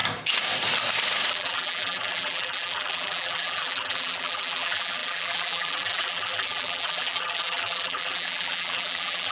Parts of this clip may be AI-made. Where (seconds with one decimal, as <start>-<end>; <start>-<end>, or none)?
1.3-9.3